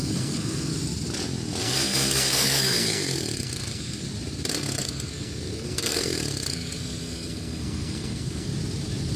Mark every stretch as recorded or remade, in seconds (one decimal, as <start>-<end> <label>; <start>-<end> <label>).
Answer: 0.0-0.7 remade; 0.7-1.6 recorded; 1.6-4.0 remade; 4.0-4.5 recorded; 4.5-8.5 remade; 8.5-9.2 recorded